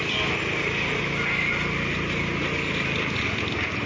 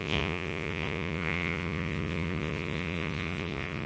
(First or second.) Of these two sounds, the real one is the first